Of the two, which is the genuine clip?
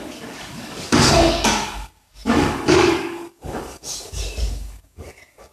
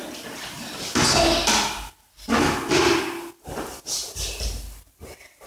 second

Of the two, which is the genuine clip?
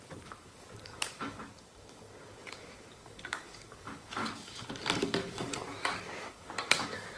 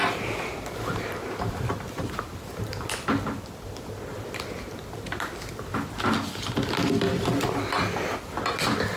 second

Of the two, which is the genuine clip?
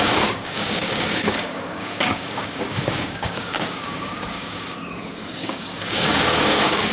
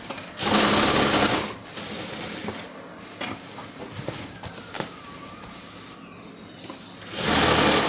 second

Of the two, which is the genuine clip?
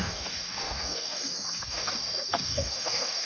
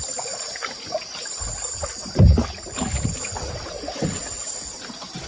second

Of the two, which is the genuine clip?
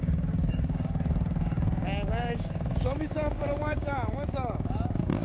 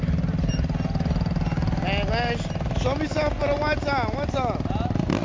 second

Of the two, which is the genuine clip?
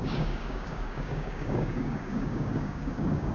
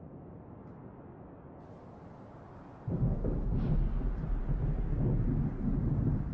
second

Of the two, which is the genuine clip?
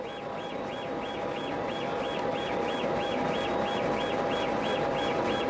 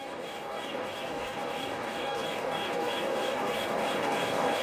first